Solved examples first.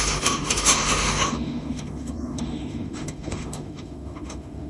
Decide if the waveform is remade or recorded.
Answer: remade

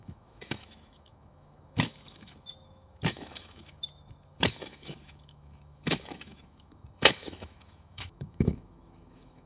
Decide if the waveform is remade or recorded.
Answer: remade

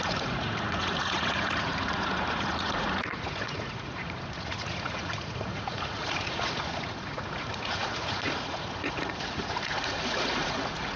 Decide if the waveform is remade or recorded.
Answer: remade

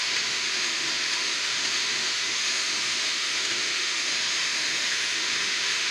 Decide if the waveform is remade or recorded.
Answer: remade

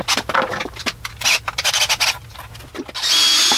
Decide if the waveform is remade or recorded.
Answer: recorded